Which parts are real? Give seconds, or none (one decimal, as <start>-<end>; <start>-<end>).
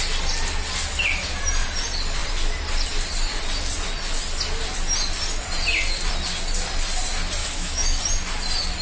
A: 0.0-7.4; 8.0-8.8